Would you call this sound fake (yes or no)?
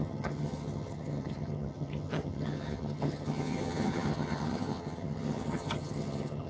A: yes